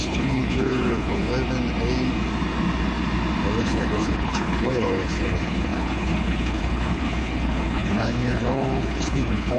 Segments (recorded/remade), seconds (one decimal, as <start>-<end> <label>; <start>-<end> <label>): 0.0-1.3 remade; 1.3-3.6 recorded; 3.6-9.6 remade